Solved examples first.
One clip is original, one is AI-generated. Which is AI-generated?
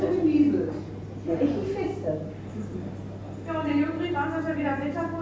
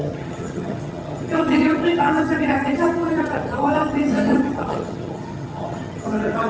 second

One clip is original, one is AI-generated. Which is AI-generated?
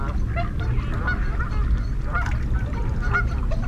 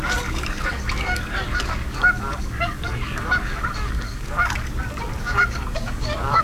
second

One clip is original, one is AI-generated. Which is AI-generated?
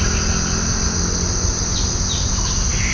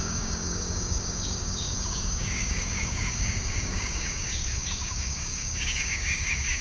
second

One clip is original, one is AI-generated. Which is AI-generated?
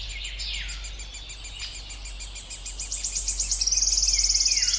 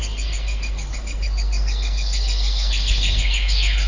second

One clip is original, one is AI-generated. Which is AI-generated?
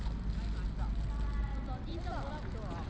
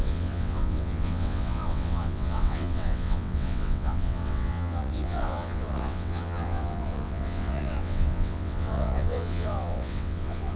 second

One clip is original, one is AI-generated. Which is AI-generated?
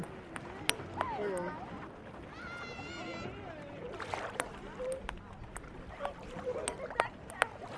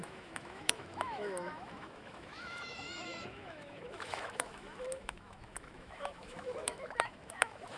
second